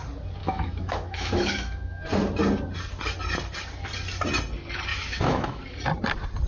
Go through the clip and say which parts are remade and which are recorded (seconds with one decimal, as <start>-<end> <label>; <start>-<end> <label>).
0.0-0.4 recorded; 0.4-2.1 remade; 2.1-4.9 recorded; 4.9-5.6 remade; 5.6-6.5 recorded